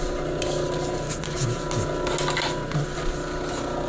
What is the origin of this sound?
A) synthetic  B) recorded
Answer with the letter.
B